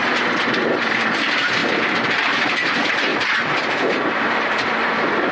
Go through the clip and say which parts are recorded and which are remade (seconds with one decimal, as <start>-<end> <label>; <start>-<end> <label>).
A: 0.0-0.6 recorded; 0.6-1.6 remade; 1.6-2.4 recorded; 2.4-5.3 remade